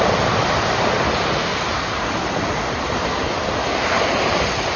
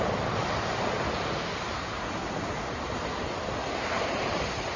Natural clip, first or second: second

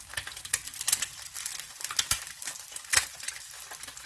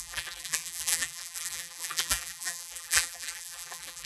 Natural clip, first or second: first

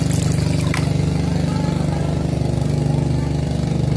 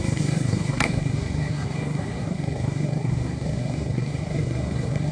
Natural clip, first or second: first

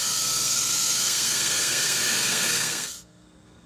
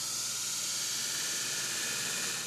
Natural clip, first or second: second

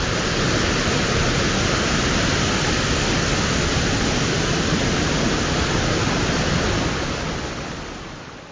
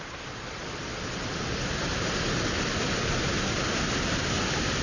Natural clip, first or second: first